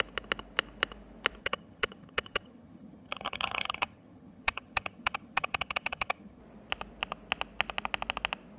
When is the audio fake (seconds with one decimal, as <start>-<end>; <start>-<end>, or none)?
1.4-6.4